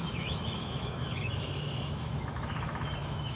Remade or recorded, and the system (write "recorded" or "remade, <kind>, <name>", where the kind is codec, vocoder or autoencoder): remade, autoencoder, DAC-VAE